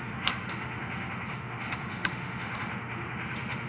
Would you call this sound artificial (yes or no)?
yes